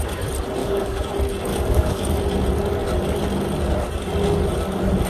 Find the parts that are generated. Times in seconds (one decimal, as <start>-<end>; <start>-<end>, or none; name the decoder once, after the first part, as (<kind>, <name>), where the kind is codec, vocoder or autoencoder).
0.6-1.1 (codec, DAC); 1.5-2.1